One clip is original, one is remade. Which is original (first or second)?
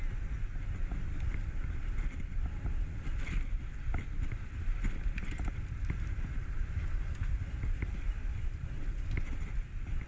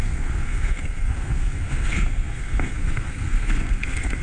first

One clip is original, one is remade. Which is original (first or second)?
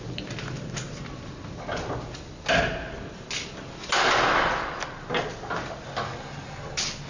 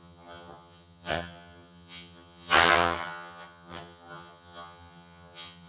first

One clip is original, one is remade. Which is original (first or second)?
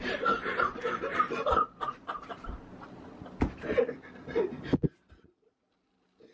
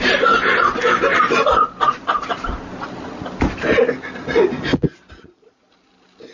second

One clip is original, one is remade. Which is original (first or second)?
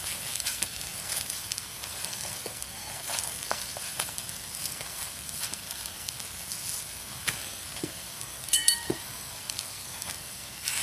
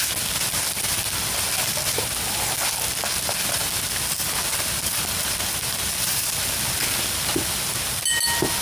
second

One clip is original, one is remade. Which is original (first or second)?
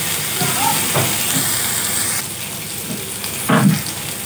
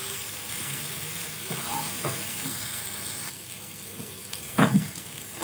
first